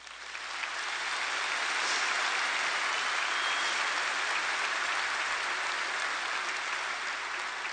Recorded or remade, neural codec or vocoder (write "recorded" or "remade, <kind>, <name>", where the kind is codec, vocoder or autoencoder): recorded